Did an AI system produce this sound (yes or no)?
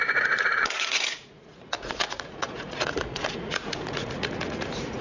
yes